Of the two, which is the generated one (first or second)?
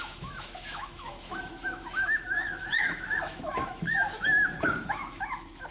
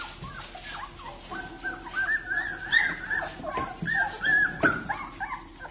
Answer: first